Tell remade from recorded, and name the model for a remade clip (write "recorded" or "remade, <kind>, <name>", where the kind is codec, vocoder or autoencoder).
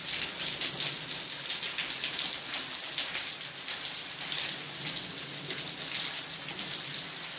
recorded